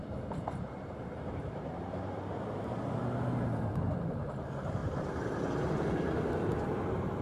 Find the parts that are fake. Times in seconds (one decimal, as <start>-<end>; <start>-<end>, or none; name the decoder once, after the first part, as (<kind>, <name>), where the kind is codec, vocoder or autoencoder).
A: 0.0-2.8 (vocoder, BigVGAN v2); 4.8-5.7